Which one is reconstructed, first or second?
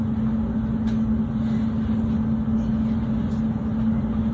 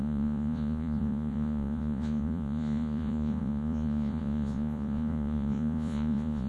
second